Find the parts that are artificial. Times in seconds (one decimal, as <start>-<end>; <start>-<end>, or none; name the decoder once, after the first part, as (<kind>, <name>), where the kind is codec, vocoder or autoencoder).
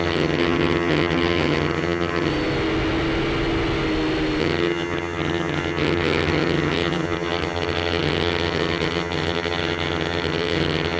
0.0-2.3 (vocoder, HiFi-GAN); 4.4-11.0